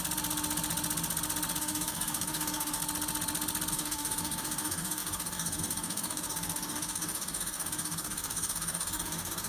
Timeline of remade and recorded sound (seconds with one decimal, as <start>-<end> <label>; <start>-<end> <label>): 0.0-1.6 recorded; 1.6-2.8 remade; 2.8-3.7 recorded; 3.7-9.5 remade